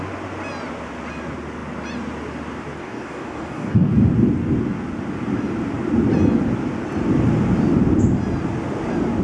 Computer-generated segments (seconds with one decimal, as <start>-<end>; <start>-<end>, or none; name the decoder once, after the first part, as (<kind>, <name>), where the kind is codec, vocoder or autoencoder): 2.8-3.9 (codec, DAC)